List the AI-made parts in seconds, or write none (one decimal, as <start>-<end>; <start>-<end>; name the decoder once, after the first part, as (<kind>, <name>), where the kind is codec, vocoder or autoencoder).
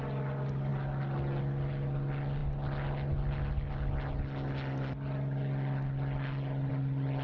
none